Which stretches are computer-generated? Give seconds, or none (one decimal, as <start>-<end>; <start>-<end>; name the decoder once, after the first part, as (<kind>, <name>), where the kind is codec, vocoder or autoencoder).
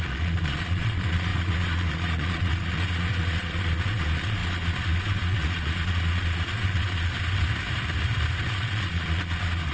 0.0-7.1 (vocoder, Vocos); 8.5-9.7